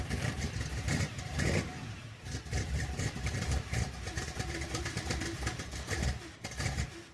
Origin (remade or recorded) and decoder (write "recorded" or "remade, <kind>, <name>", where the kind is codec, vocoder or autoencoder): remade, vocoder, BigVGAN v2